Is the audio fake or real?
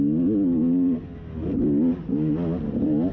real